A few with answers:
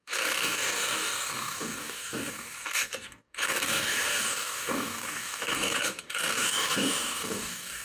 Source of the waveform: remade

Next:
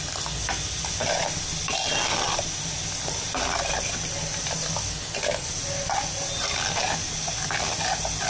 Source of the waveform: recorded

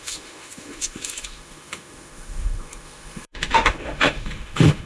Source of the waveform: remade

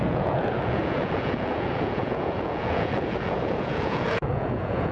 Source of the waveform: remade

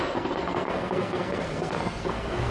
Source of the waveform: remade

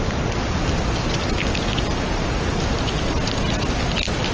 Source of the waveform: recorded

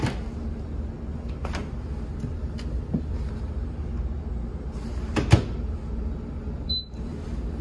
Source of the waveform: recorded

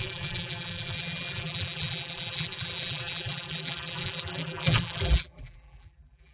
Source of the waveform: remade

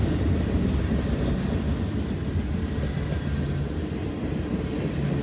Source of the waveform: recorded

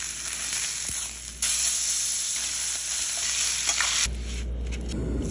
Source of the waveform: recorded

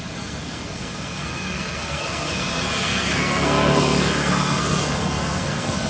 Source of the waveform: remade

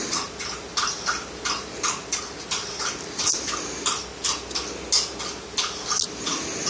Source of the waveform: recorded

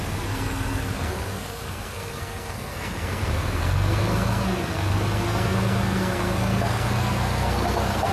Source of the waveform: remade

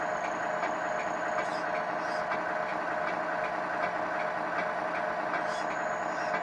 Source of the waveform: recorded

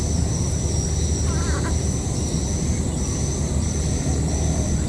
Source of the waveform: recorded